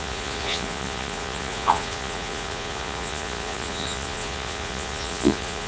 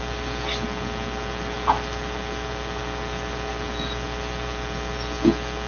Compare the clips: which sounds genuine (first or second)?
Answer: second